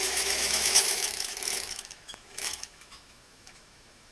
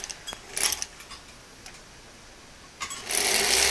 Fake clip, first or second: first